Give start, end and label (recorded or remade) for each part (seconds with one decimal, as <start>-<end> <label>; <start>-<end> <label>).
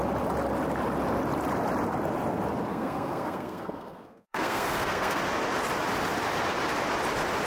0.0-2.7 recorded; 2.7-5.2 remade; 5.2-7.5 recorded